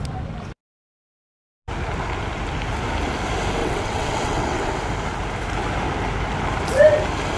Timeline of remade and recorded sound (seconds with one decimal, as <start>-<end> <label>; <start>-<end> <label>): 0.0-3.6 recorded; 3.6-4.7 remade; 4.7-7.4 recorded